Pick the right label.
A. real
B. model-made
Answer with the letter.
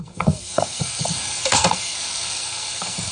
B